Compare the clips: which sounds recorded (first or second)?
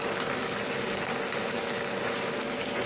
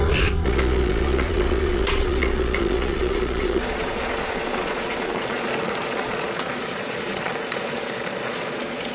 first